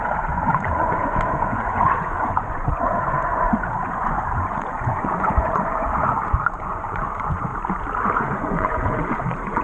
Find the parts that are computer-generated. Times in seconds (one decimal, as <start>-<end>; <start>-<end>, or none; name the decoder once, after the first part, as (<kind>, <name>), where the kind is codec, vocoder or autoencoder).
0.0-7.5 (vocoder, Vocos); 8.2-9.6